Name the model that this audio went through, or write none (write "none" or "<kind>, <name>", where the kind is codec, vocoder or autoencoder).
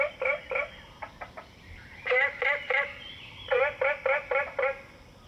vocoder, BigVGAN v2